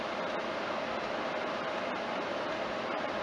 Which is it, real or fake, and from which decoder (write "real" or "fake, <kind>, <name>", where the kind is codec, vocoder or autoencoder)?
real